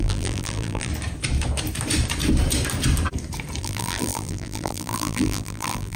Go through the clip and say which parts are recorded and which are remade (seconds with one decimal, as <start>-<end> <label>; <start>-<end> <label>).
0.0-0.9 remade; 0.9-3.6 recorded; 3.6-6.0 remade